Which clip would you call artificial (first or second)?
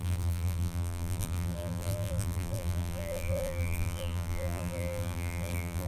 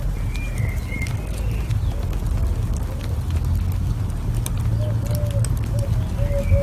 first